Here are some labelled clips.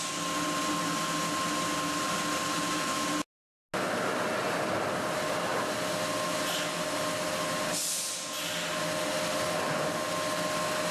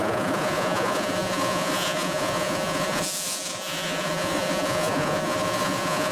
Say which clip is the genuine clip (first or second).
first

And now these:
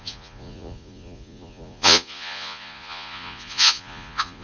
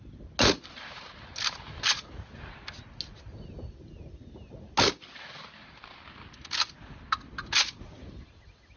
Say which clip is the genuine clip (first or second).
second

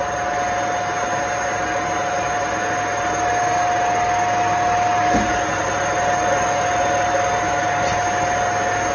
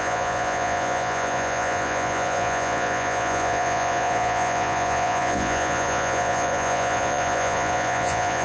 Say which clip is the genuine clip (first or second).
first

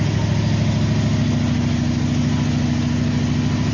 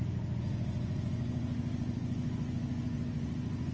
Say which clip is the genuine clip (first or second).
first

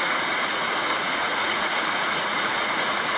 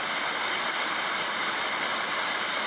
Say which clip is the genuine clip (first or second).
second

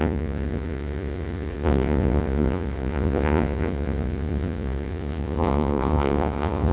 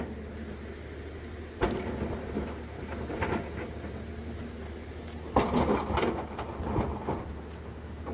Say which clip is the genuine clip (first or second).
second